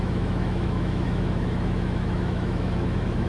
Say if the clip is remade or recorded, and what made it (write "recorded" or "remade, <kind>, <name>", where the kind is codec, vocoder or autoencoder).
remade, autoencoder, DAC-VAE